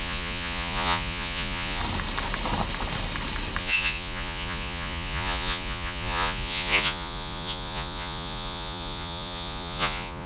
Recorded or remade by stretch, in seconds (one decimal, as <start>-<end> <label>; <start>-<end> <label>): 0.0-1.8 remade; 1.8-3.6 recorded; 3.6-10.3 remade